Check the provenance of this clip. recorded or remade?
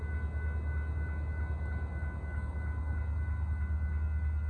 recorded